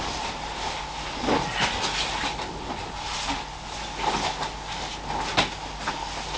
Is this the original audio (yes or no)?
yes